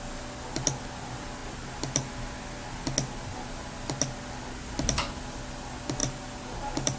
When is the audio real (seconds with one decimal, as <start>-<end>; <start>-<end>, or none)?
0.0-7.0

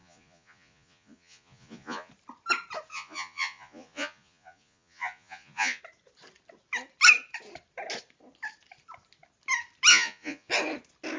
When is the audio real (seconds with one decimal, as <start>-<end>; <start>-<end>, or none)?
2.1-2.9; 5.8-9.9; 10.5-11.2

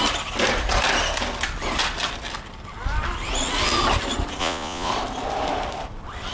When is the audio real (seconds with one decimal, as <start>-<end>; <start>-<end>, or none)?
0.0-4.4; 4.9-6.3